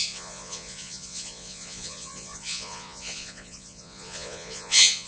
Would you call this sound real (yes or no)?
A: no